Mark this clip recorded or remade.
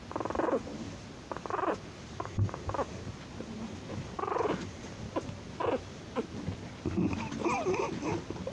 recorded